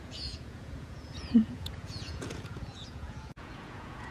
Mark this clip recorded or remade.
remade